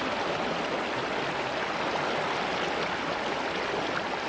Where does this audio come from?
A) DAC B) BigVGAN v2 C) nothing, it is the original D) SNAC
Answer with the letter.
C